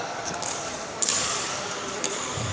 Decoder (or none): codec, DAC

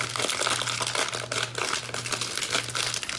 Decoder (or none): none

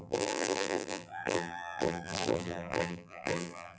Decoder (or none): vocoder, BigVGAN v2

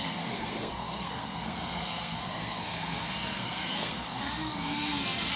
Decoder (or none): codec, SNAC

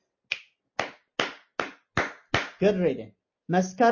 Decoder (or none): none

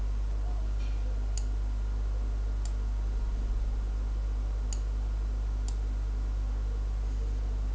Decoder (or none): none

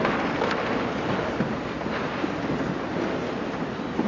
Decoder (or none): none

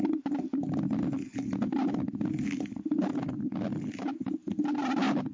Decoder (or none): none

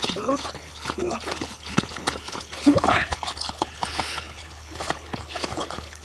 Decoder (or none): codec, HILCodec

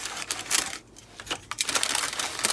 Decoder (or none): none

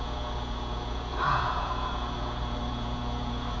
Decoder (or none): vocoder, Vocos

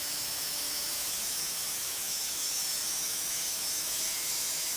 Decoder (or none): autoencoder, DAC-VAE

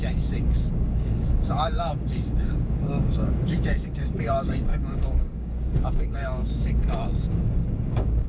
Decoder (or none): codec, DAC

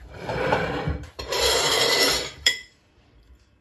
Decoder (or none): vocoder, BigVGAN v2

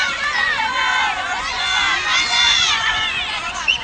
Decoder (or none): vocoder, Vocos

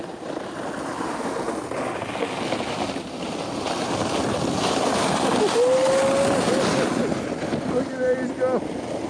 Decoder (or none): none